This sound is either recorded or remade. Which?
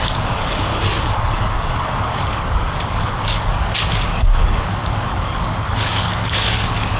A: remade